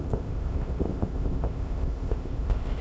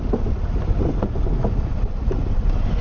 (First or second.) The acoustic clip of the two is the second